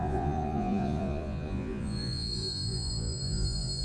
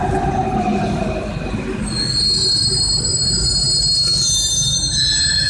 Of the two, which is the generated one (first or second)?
first